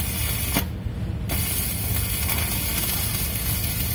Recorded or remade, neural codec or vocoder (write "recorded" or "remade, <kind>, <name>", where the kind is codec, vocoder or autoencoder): recorded